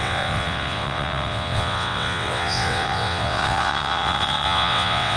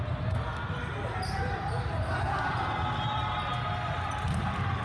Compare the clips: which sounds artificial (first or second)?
first